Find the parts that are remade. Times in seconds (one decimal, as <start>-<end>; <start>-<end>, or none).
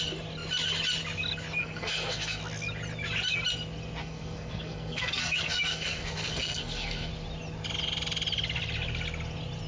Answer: 1.6-2.4; 4.0-7.1